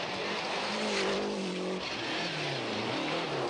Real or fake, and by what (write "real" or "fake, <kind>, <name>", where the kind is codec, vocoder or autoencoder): real